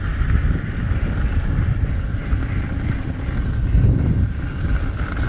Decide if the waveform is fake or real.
real